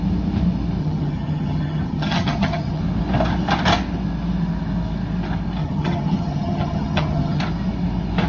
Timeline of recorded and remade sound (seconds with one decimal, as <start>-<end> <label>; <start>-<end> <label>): 0.0-0.8 recorded; 0.8-2.8 remade; 2.8-5.6 recorded; 5.6-7.4 remade; 7.4-8.3 recorded